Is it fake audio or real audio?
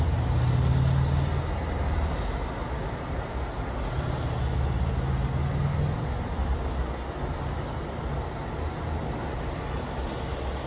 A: real